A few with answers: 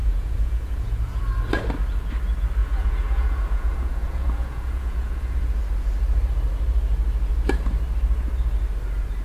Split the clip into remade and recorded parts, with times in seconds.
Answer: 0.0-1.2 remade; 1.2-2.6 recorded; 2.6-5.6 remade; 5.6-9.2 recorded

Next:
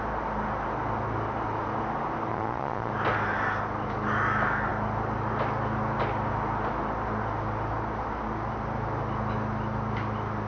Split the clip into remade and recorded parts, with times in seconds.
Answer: 0.0-2.3 recorded; 2.3-2.9 remade; 2.9-10.5 recorded

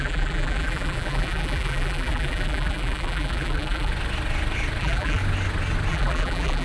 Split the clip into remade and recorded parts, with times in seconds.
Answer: 0.0-3.9 remade; 3.9-4.8 recorded; 4.8-5.2 remade; 5.2-5.9 recorded; 5.9-6.6 remade